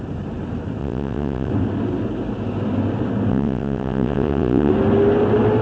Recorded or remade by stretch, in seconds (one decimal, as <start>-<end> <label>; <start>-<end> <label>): 0.0-0.8 recorded; 0.8-1.5 remade; 1.5-3.3 recorded; 3.3-4.7 remade; 4.7-5.6 recorded